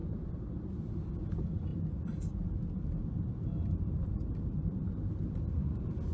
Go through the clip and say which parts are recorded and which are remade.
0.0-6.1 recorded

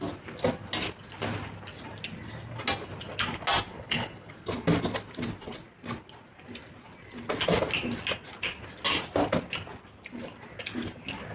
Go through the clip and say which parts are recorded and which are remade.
0.0-3.7 recorded; 3.7-4.3 remade; 4.3-11.3 recorded